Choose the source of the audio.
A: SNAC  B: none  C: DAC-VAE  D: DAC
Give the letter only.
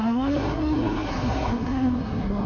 A